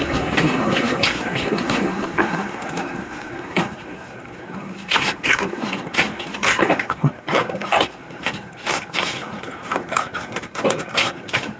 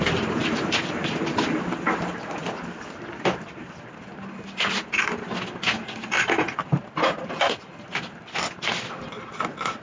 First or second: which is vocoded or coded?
first